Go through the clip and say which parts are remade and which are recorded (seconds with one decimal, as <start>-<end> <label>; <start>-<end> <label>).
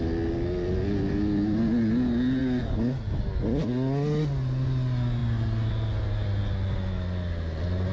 0.0-7.9 recorded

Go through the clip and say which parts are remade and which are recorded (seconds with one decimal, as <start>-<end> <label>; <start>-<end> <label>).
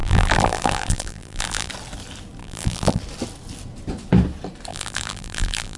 0.0-1.7 remade; 1.7-2.4 recorded; 2.4-3.0 remade; 3.0-4.7 recorded; 4.7-5.8 remade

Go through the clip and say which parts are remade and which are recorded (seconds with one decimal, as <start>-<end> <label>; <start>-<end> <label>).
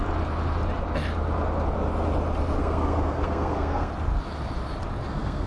0.0-2.6 recorded; 2.6-3.9 remade; 3.9-5.1 recorded; 5.1-5.5 remade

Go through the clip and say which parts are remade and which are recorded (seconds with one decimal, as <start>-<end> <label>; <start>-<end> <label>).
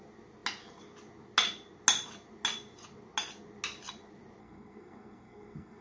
0.0-4.4 recorded; 4.4-5.8 remade